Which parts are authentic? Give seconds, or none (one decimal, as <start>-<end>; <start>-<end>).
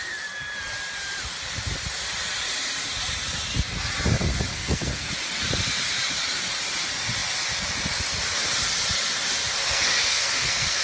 0.0-4.5; 5.1-9.6